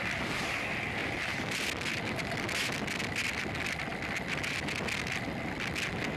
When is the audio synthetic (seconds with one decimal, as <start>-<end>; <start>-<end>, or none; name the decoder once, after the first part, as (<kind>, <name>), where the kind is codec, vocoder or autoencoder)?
none